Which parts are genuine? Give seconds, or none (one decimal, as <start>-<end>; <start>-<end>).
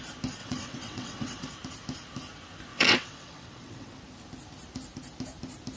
0.0-0.4; 1.5-2.7; 4.0-5.8